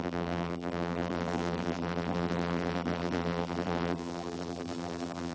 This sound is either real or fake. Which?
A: fake